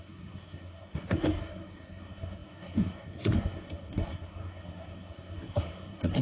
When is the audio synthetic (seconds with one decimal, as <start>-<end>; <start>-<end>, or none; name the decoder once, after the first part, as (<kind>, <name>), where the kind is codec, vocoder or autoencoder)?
0.0-6.2 (codec, SNAC)